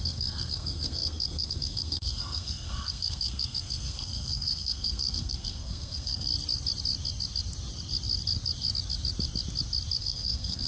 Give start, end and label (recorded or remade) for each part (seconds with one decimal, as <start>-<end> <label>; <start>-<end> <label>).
0.0-6.3 remade; 6.3-10.0 recorded; 10.0-10.7 remade